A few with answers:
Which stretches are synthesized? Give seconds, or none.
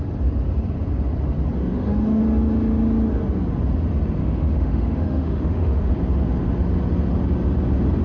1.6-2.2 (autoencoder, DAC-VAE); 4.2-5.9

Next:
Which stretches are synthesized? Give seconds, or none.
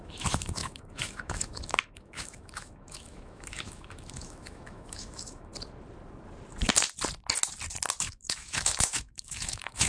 0.0-5.5 (autoencoder, DAC-VAE); 8.0-9.9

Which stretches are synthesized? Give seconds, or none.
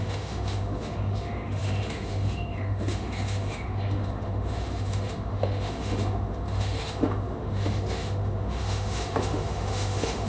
0.0-10.3 (autoencoder, DAC-VAE)